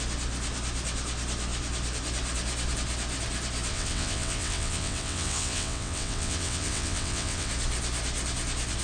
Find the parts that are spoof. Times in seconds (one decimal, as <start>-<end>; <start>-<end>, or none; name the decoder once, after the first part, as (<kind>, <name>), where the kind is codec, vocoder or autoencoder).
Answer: 3.7-7.5 (vocoder, WaveNeXt)